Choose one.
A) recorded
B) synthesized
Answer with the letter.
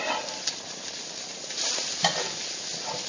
A